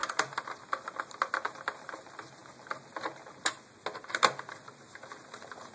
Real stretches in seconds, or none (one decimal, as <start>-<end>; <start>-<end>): 0.0-5.7